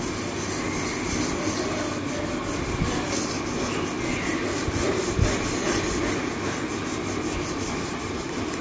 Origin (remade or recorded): recorded